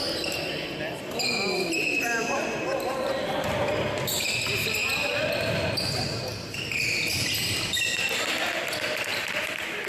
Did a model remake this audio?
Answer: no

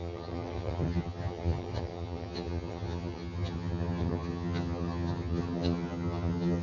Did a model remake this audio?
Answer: yes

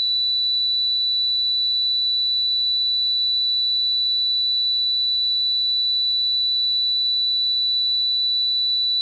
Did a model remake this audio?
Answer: no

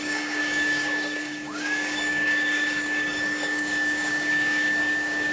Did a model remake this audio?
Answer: yes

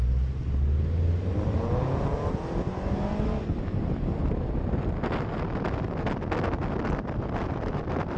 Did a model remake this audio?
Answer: no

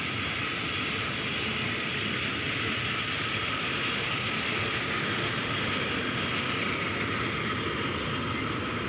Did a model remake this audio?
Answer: no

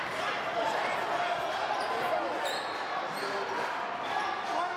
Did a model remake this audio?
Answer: no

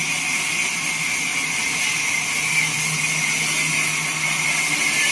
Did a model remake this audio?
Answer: no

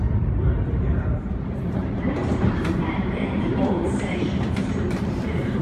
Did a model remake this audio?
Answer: yes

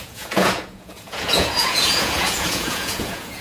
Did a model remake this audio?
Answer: yes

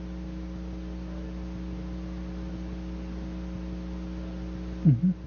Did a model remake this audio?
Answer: no